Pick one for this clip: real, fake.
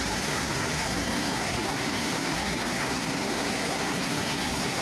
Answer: fake